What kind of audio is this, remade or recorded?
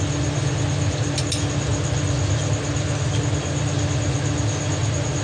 recorded